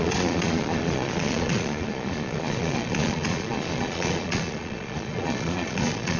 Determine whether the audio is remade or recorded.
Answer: remade